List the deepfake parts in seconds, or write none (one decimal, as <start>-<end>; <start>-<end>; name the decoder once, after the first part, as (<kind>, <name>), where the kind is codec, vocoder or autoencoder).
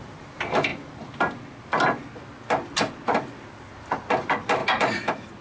none